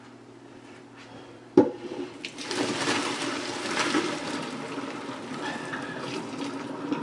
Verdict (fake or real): fake